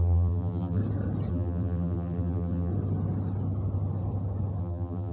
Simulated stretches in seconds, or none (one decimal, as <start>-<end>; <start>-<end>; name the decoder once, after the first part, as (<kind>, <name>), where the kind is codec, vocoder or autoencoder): 0.0-0.8 (vocoder, BigVGAN v2); 1.3-2.7; 4.6-5.1